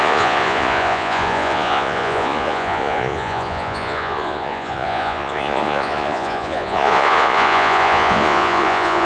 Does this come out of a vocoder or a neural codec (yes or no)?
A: yes